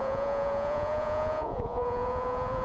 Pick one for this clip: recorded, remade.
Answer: remade